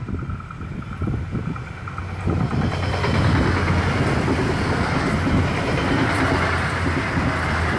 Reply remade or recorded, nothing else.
recorded